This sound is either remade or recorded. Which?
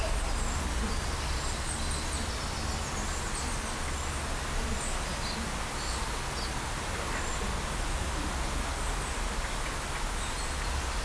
recorded